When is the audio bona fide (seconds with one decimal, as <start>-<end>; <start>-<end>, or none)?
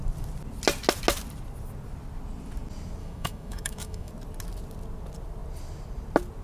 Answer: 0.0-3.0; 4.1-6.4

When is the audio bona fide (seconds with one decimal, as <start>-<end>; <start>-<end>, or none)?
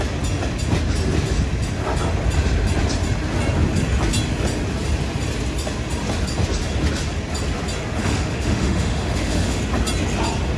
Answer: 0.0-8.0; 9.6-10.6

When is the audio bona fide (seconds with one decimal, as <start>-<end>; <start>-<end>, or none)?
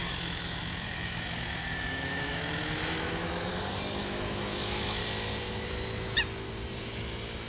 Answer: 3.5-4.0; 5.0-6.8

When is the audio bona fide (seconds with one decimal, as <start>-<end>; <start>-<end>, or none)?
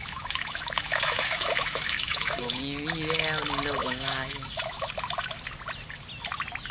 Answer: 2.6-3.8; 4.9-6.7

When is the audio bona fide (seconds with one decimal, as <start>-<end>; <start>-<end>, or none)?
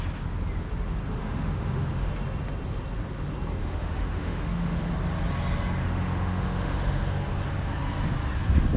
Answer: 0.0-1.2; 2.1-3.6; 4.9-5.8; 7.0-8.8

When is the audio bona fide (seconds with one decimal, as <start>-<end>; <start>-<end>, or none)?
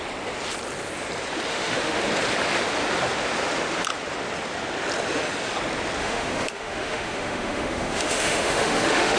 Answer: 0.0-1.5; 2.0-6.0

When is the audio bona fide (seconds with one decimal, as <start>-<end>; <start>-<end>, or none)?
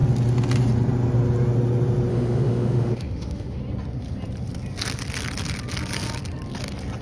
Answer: 0.0-2.1; 3.6-7.0